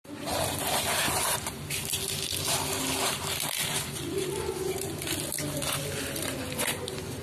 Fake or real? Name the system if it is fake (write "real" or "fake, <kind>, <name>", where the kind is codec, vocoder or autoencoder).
real